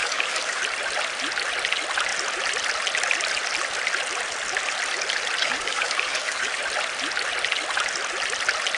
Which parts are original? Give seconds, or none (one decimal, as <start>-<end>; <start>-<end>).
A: 0.6-5.4; 6.6-8.8